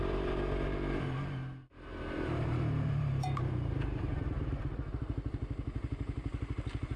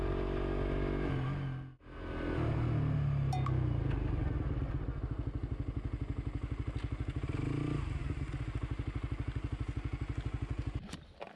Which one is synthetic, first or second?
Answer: first